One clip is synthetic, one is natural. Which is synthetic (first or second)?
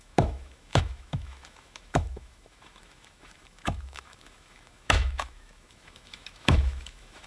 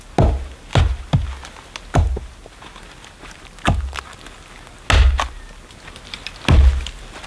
first